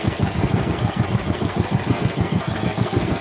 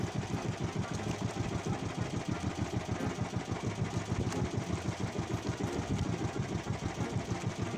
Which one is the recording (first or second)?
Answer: second